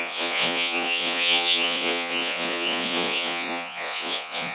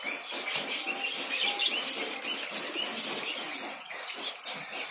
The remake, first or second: first